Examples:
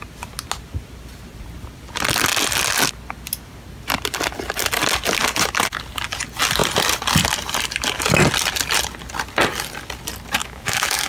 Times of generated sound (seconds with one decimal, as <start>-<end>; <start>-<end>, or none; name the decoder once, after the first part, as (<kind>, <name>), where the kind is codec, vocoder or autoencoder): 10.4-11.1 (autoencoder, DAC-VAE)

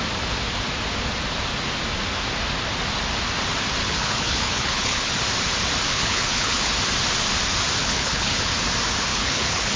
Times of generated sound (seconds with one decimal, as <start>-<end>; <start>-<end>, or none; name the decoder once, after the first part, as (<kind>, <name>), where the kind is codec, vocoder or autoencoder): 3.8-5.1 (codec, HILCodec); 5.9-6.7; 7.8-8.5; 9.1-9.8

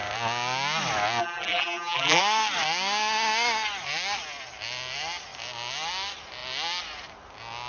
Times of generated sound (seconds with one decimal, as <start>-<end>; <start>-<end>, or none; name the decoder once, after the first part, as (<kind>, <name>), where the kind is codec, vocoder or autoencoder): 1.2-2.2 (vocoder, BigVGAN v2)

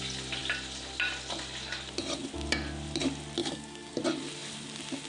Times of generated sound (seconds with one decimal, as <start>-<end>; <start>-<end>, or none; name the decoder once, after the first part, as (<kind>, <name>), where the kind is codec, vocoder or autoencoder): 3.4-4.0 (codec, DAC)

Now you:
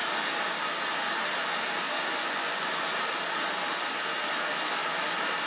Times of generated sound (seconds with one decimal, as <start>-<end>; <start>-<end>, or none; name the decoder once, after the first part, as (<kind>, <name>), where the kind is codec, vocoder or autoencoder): 2.1-2.7 (vocoder, Vocos)

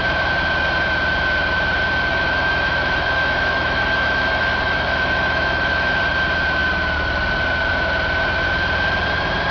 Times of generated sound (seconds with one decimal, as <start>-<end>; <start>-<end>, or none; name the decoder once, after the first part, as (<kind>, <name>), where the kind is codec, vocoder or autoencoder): 2.1-6.0 (autoencoder, DAC-VAE)

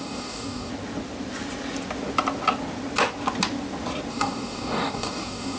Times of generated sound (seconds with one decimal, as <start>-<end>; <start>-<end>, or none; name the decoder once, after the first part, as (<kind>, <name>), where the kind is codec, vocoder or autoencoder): 0.0-0.7 (codec, DAC); 4.1-5.6